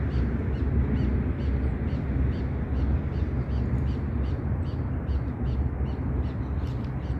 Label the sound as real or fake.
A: real